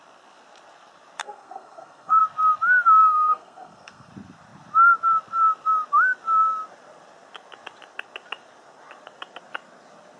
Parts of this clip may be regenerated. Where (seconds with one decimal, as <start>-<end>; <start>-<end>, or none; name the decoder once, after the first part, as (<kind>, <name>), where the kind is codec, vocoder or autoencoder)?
1.2-2.2 (codec, SNAC); 3.0-4.1